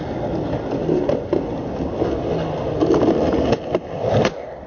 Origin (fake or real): real